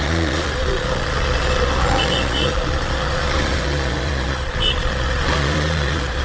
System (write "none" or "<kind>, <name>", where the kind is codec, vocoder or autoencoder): vocoder, Vocos